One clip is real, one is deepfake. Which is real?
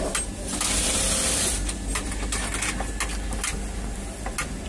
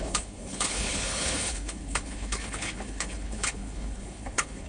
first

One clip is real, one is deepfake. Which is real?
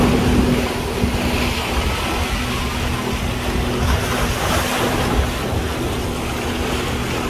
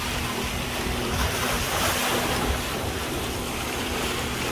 first